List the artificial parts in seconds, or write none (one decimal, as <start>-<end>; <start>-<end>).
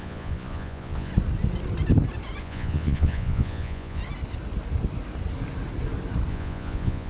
0.0-1.1; 2.4-4.0; 6.3-7.1